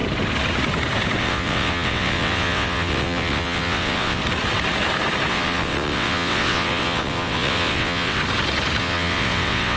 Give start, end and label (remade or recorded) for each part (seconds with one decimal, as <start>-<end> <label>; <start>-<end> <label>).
0.0-1.2 recorded; 1.2-4.2 remade; 4.2-5.3 recorded; 5.3-8.2 remade; 8.2-8.8 recorded; 8.8-9.8 remade